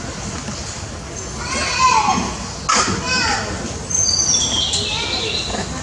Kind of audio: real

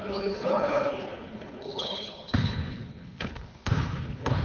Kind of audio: fake